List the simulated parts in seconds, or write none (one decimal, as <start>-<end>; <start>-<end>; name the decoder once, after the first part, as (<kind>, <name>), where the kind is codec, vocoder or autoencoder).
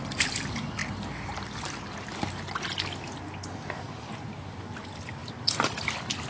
none